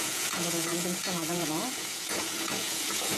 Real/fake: fake